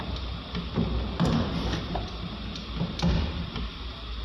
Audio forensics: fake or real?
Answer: real